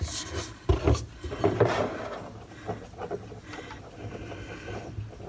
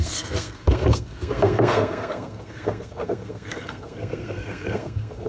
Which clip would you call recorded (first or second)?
first